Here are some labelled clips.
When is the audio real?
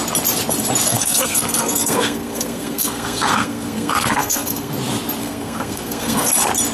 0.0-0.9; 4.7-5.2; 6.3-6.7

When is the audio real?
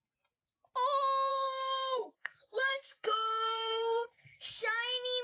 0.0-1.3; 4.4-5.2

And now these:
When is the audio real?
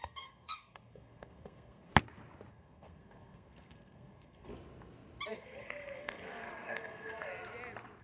1.9-2.5; 4.5-5.3; 7.3-8.0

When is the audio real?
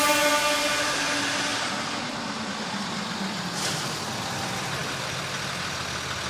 0.0-6.3